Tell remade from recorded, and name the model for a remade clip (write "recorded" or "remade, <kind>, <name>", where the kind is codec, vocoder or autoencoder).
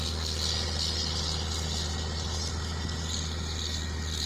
recorded